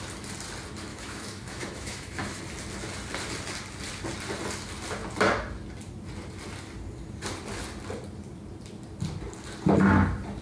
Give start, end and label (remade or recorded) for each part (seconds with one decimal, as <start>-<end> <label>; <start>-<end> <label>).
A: 0.0-0.9 recorded; 0.9-2.4 remade; 2.4-10.4 recorded